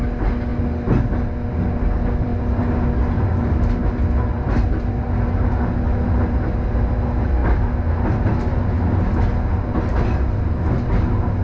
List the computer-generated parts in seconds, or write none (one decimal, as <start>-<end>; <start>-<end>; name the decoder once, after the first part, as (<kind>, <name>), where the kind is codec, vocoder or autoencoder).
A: none